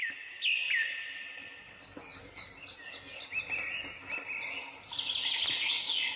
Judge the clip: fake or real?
real